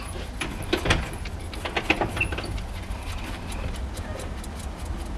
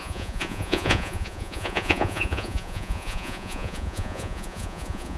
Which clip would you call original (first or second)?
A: first